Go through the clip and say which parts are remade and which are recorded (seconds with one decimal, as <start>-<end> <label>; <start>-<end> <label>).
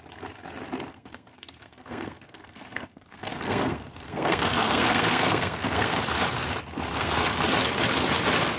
0.0-0.9 recorded; 0.9-6.0 remade; 6.0-6.9 recorded; 6.9-7.4 remade; 7.4-8.6 recorded